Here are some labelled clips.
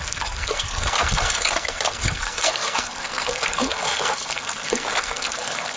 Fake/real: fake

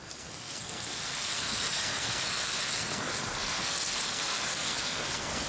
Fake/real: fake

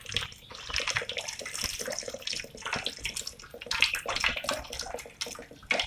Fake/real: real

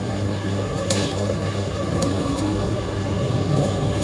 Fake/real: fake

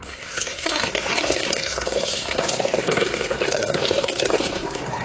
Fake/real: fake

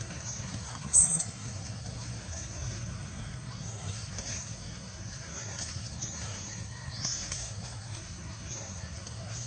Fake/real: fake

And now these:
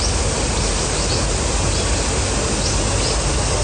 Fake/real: real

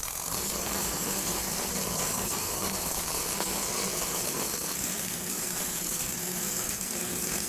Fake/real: fake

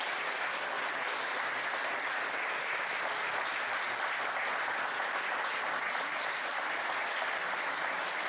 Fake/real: real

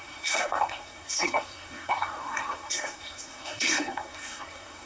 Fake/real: fake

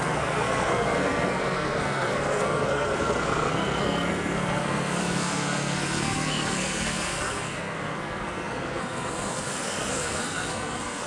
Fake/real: fake